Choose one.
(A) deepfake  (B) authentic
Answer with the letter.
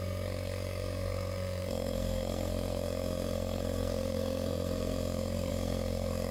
A